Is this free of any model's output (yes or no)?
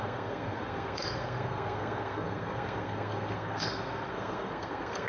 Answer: no